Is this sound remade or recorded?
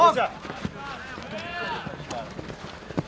recorded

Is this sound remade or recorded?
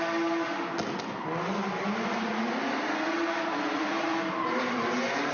recorded